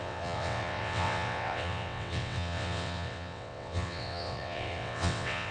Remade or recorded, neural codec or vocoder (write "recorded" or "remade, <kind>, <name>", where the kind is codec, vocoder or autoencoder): remade, vocoder, WaveNeXt